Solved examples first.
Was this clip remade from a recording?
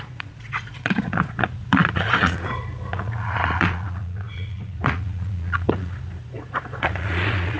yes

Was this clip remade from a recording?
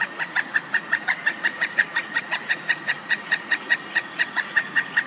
yes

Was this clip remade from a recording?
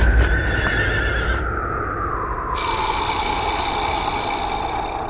no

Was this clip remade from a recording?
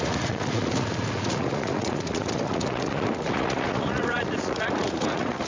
yes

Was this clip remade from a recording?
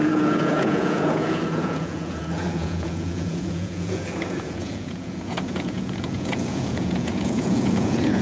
yes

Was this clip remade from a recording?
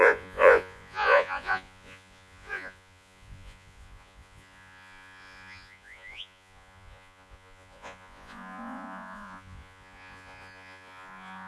yes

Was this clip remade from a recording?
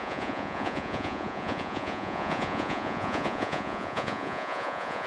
yes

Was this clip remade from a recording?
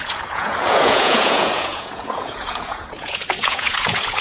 yes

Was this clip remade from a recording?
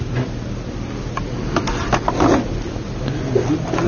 no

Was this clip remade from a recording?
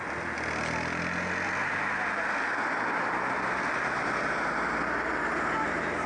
no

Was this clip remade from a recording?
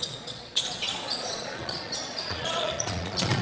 yes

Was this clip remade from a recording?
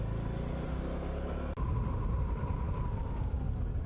no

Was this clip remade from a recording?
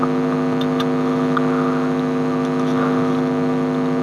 no